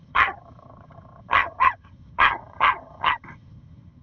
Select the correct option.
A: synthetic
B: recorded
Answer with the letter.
A